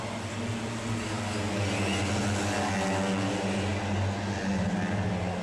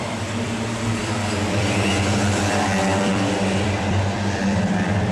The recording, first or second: first